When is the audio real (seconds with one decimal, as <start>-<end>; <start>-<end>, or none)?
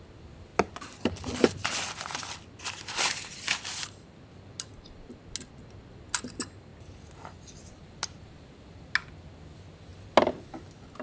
0.0-11.0